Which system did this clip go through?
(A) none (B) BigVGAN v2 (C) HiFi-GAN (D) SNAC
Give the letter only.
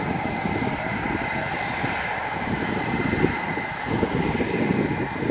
A